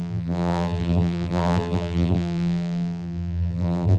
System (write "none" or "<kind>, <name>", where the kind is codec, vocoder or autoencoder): vocoder, BigVGAN v2